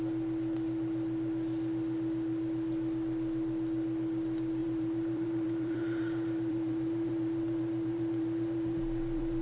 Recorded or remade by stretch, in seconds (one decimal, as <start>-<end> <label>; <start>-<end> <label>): 0.0-4.6 recorded; 4.6-9.4 remade